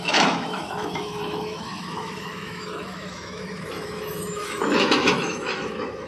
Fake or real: fake